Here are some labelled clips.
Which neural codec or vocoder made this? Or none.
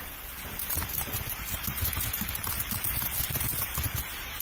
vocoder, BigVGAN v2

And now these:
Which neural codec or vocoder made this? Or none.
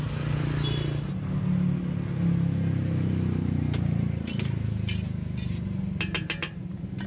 none